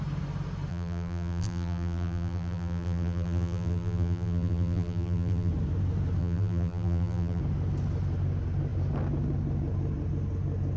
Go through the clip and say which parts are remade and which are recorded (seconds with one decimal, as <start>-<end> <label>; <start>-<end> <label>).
0.0-0.7 recorded; 0.7-5.5 remade; 5.5-6.2 recorded; 6.2-7.4 remade; 7.4-10.8 recorded